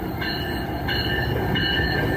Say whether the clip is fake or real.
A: real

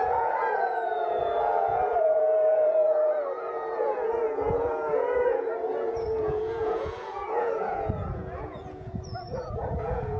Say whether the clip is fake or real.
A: fake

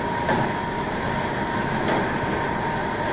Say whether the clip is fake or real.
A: real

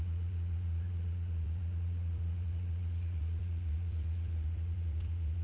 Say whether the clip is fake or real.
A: fake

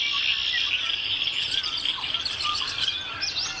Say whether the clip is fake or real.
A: real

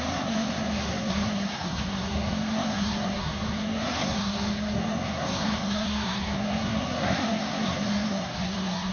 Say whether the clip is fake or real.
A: fake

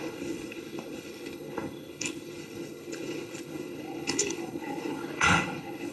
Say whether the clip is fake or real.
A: fake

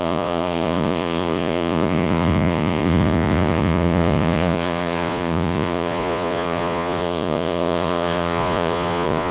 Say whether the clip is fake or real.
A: fake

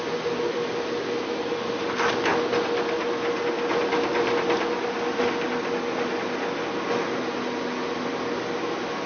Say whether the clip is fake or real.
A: real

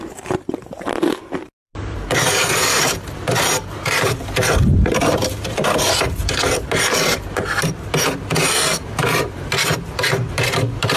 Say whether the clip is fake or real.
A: fake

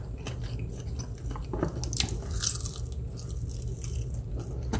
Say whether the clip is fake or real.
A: real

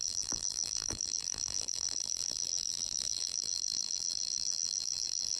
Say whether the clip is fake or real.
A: fake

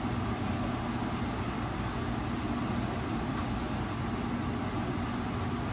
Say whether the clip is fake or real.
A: real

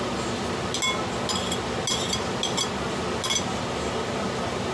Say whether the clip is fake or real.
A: real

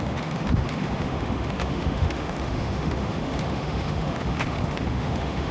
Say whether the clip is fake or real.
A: fake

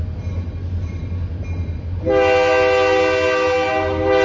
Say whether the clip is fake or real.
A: real